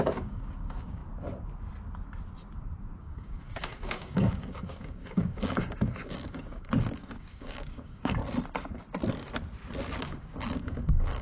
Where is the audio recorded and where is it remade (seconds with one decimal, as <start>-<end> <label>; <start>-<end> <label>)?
0.0-1.0 remade; 1.0-3.0 recorded; 3.0-8.2 remade; 8.2-10.0 recorded; 10.0-11.2 remade